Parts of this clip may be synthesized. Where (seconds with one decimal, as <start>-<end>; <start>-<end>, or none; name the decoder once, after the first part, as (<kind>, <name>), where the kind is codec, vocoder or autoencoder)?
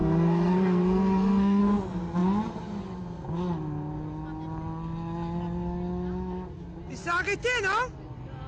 0.0-1.6 (codec, SNAC)